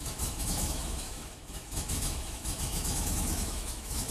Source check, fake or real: fake